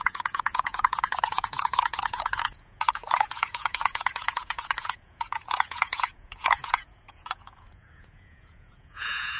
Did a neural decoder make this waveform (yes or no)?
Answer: yes